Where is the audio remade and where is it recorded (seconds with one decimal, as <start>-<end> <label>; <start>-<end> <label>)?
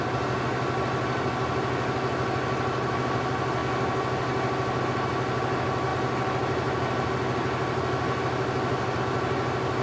0.0-9.8 recorded